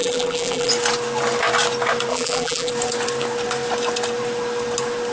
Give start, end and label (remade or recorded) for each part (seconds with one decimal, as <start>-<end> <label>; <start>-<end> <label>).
0.0-0.7 remade; 0.7-2.1 recorded; 2.1-2.7 remade; 2.7-5.1 recorded